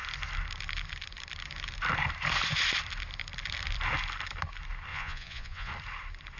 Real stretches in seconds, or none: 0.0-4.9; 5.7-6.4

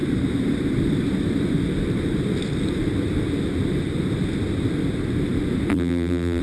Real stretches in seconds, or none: 0.0-5.7

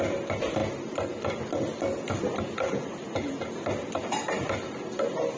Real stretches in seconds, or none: 0.0-5.4

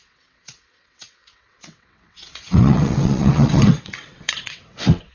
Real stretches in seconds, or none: none

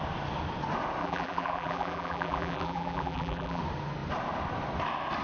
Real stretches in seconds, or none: 0.0-1.0; 3.6-5.2

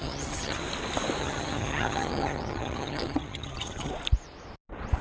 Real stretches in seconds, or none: 0.6-1.2; 3.9-5.0